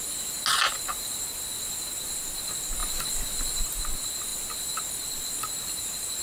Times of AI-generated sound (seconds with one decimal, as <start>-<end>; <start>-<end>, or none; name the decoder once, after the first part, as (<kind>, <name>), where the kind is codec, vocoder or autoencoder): none